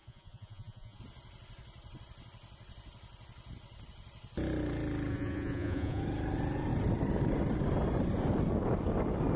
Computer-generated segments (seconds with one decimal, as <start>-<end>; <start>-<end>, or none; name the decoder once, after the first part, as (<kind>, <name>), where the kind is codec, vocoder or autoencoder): 0.0-1.0 (vocoder, Vocos); 5.1-6.0